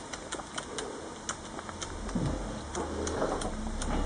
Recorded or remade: recorded